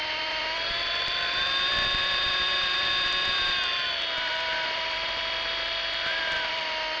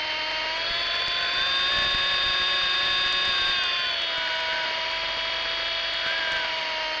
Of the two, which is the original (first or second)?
second